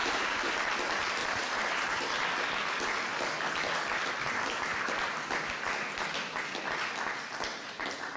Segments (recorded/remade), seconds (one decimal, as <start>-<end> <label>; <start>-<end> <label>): 0.0-0.5 remade; 0.5-1.2 recorded; 1.2-2.2 remade; 2.2-7.5 recorded; 7.5-8.2 remade